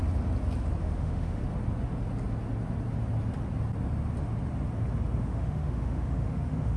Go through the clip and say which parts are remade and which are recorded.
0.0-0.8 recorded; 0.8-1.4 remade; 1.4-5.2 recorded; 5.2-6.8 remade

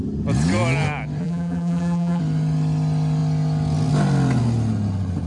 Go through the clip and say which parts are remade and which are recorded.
0.0-1.2 recorded; 1.2-2.2 remade; 2.2-5.3 recorded